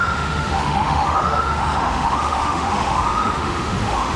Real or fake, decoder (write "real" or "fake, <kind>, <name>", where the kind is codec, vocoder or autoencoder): fake, autoencoder, DAC-VAE